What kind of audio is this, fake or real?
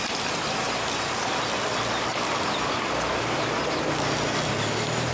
real